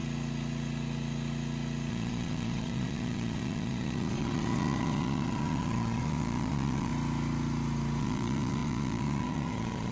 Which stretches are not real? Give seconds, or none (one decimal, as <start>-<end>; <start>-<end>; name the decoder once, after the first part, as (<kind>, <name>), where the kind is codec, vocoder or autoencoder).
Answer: 1.9-6.9 (vocoder, Vocos); 8.0-9.9

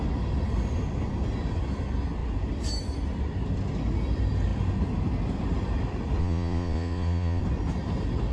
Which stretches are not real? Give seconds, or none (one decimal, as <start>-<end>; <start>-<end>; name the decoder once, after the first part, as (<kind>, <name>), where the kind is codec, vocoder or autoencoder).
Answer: 6.2-7.4 (vocoder, Vocos)